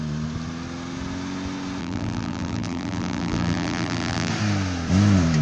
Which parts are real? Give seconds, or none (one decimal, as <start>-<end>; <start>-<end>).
0.0-1.8; 4.3-5.4

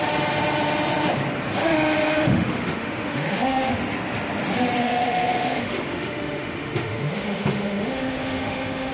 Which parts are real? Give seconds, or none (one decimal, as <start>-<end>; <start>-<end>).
0.0-1.6; 3.8-4.8

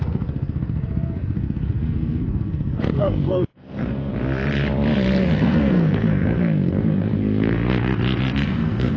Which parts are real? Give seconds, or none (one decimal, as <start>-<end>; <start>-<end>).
4.1-5.2